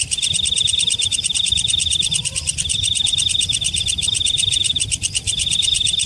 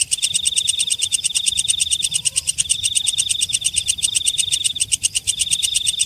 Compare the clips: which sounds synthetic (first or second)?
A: first